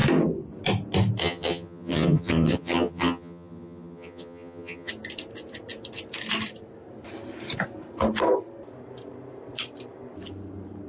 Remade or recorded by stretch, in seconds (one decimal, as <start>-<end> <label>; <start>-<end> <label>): 0.0-1.2 recorded; 1.2-4.9 remade; 4.9-10.9 recorded